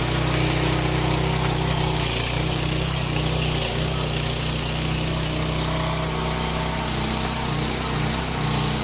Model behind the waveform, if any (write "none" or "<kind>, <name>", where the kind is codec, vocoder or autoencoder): none